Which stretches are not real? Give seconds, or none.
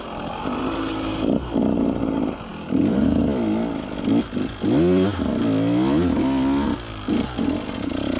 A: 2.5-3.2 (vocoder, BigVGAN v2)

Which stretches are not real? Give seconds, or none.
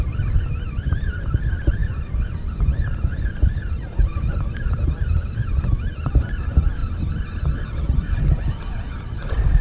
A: none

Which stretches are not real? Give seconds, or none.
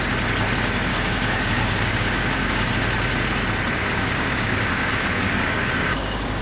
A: 0.9-2.7 (codec, DAC); 3.8-6.4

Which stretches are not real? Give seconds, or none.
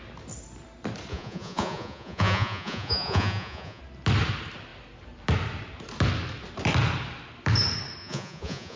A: 1.1-3.8 (vocoder, Vocos); 8.0-8.8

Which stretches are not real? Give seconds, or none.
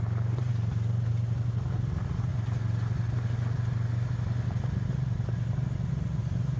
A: none